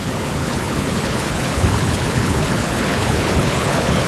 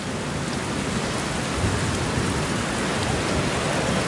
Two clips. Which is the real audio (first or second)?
second